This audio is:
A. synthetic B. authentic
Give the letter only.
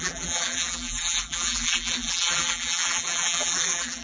A